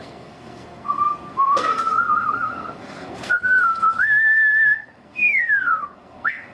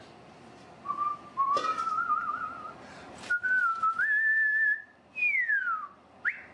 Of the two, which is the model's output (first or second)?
first